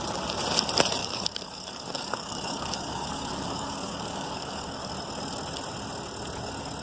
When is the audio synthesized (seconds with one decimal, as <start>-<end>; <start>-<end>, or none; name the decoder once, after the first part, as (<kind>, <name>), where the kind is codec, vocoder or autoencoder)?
1.0-4.9 (codec, DAC)